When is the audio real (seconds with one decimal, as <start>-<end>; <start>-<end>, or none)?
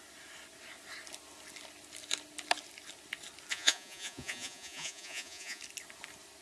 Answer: 0.0-3.5; 5.6-6.4